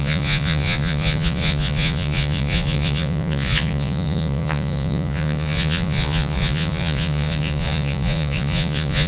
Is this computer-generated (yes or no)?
yes